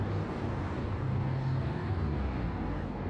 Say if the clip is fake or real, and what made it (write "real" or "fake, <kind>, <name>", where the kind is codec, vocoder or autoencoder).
fake, codec, DAC